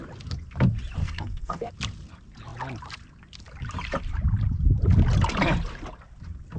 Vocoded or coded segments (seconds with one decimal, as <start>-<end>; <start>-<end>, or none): 1.0-1.7